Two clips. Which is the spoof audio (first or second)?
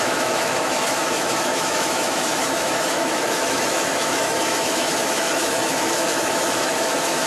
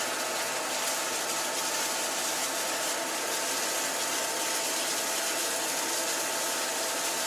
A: first